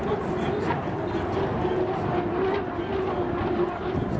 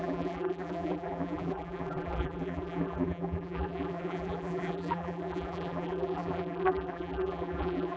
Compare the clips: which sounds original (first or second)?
first